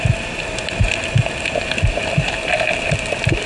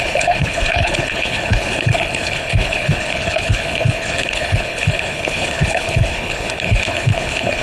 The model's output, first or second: second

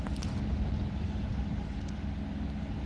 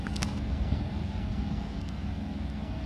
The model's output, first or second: second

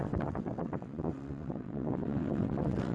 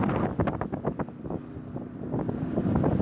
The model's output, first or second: first